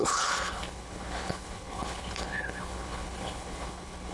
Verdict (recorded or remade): remade